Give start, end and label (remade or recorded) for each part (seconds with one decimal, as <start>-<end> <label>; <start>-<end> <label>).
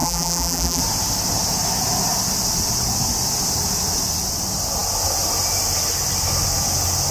0.0-0.8 remade; 0.8-7.1 recorded